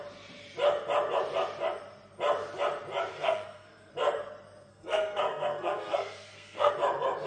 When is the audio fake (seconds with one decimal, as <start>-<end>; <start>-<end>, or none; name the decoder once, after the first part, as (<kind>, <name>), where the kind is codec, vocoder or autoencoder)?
3.1-3.9 (codec, SNAC); 4.7-6.7